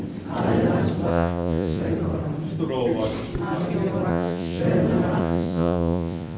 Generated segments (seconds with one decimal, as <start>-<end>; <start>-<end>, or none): 1.1-1.8; 4.1-4.6; 5.2-6.4